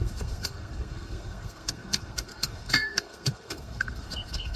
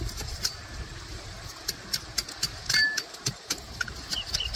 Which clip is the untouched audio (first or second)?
second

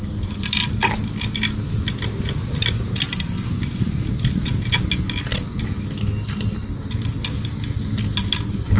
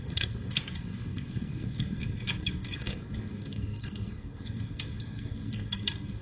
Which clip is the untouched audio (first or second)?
first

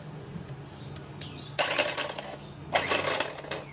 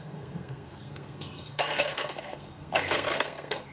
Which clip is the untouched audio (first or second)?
first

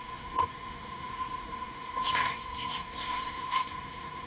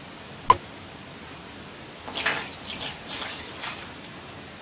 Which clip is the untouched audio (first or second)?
second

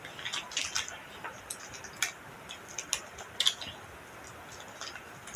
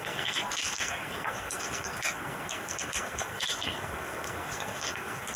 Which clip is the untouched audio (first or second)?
first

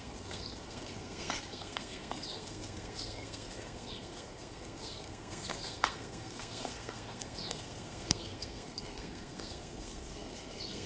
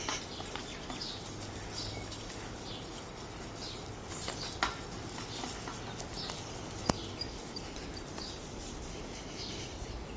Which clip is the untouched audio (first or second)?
second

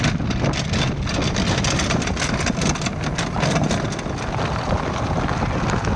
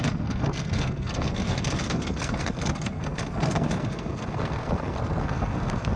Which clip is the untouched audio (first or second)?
first